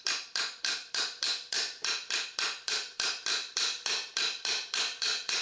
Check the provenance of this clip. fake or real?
fake